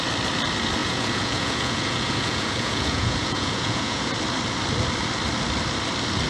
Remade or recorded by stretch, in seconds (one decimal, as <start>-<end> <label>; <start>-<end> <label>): 0.0-0.8 recorded; 0.8-4.1 remade; 4.1-6.3 recorded